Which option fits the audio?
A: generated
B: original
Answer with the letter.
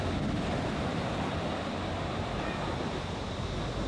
B